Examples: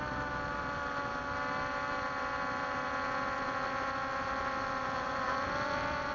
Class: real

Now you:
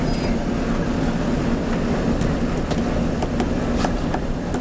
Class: real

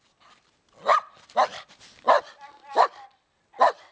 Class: real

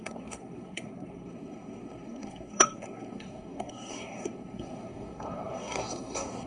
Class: fake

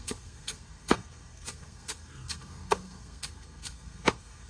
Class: fake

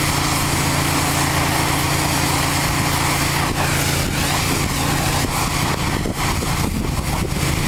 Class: real